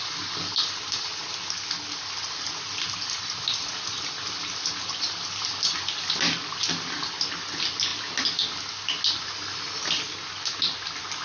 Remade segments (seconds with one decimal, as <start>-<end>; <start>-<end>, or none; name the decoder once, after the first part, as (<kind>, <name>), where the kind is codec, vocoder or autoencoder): none